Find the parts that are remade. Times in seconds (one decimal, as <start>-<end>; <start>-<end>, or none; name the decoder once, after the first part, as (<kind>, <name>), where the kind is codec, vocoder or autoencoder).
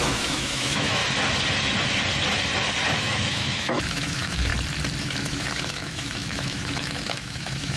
0.0-1.0 (autoencoder, DAC-VAE); 3.0-4.5; 5.0-7.8